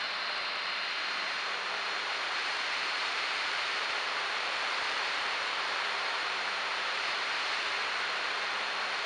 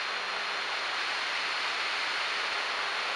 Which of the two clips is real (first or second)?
second